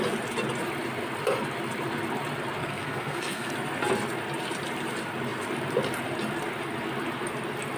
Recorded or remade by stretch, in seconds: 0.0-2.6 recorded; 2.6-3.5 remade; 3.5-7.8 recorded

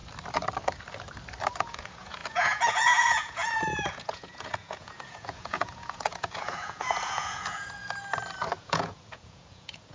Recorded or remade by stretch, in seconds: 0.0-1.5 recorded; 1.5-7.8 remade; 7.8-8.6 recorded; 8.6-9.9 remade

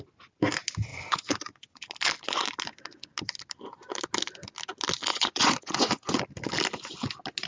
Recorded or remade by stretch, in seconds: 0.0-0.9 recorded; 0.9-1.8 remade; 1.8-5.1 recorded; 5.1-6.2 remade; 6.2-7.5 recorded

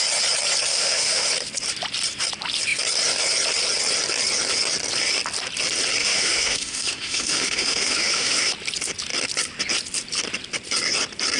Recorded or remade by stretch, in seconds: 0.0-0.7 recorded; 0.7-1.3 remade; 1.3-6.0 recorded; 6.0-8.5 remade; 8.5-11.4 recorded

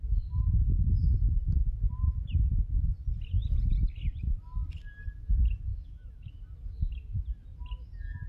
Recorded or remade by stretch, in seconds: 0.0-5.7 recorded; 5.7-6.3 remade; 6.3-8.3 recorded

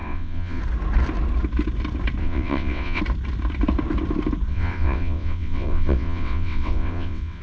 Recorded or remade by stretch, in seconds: 0.0-0.6 remade; 0.6-2.2 recorded; 2.2-3.0 remade; 3.0-4.5 recorded; 4.5-7.4 remade